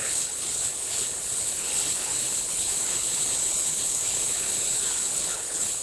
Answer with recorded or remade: remade